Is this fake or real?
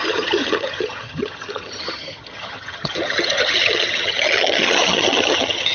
fake